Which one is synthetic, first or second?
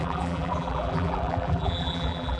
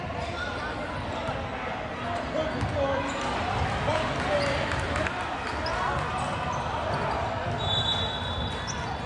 first